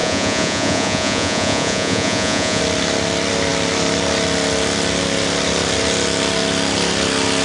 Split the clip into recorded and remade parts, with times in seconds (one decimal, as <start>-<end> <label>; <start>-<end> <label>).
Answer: 0.0-2.6 remade; 2.6-7.4 recorded